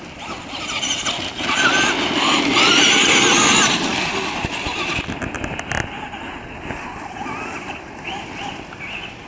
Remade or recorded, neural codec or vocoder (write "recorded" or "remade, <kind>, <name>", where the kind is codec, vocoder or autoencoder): recorded